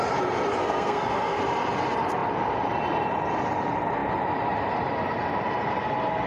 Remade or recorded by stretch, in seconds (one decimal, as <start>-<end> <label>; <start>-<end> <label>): 0.0-0.6 recorded; 0.6-1.4 remade; 1.4-6.3 recorded